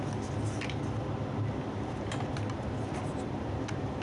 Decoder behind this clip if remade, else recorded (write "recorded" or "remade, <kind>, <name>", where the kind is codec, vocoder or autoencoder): recorded